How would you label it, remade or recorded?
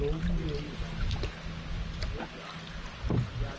recorded